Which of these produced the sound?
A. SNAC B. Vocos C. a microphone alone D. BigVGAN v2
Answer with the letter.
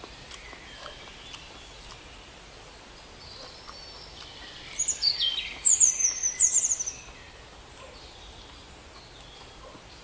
C